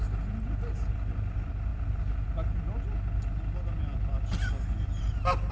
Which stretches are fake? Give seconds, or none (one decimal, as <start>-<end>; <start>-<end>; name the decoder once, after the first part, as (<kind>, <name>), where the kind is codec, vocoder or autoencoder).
none